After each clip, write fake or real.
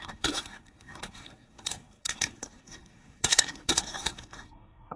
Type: fake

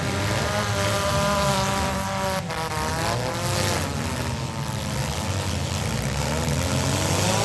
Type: real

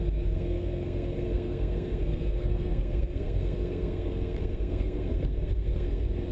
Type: fake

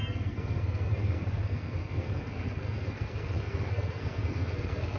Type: fake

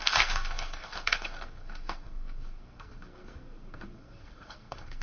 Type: fake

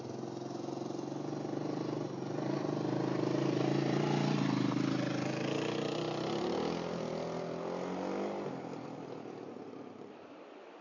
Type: real